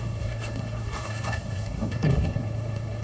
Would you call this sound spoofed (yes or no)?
yes